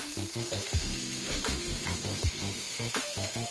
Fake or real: fake